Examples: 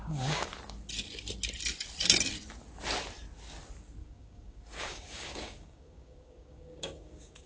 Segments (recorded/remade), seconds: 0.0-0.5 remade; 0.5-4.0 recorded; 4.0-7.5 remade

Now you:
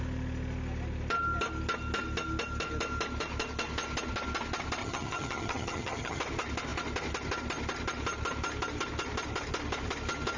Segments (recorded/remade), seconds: 0.0-4.8 recorded; 4.8-6.2 remade; 6.2-10.4 recorded

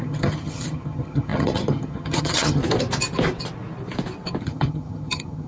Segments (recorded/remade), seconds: 0.0-2.6 remade; 2.6-4.4 recorded; 4.4-5.5 remade

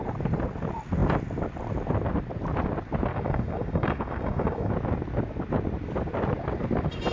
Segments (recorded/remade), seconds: 0.0-3.1 recorded; 3.1-4.7 remade; 4.7-7.1 recorded

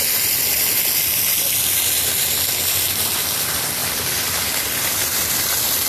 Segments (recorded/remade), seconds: 0.0-3.8 recorded; 3.8-5.9 remade

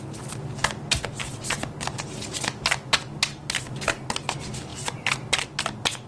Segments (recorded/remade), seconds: 0.0-6.1 recorded

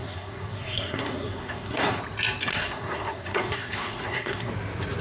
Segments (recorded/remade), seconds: 0.0-2.0 remade; 2.0-2.5 recorded; 2.5-4.5 remade; 4.5-5.0 recorded

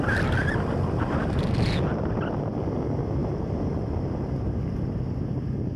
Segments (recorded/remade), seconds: 0.0-5.8 recorded